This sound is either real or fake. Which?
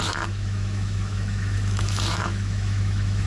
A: fake